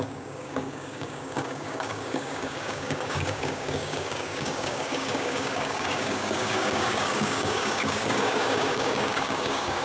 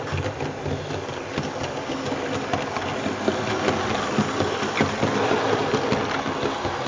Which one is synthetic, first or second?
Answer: first